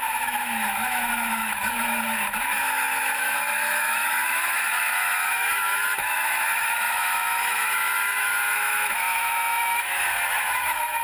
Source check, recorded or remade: remade